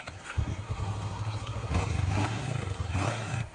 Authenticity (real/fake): fake